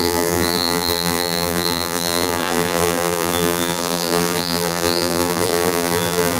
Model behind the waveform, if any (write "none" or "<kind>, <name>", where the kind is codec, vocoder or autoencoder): vocoder, BigVGAN v2